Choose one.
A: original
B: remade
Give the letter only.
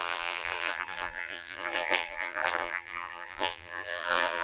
B